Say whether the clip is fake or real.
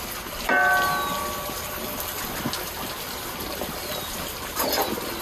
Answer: real